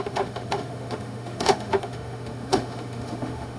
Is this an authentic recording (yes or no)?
no